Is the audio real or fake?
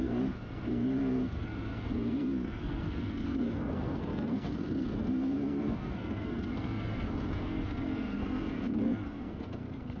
fake